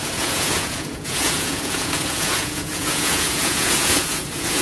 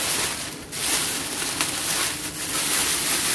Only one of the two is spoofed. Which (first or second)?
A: first